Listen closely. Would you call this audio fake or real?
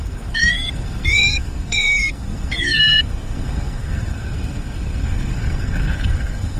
fake